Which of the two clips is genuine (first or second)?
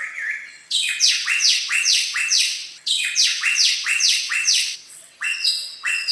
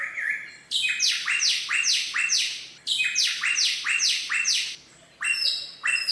second